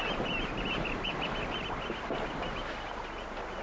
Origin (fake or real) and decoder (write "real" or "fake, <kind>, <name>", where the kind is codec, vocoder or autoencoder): real